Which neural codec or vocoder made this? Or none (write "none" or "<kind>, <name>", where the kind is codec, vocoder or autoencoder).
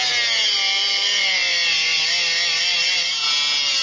none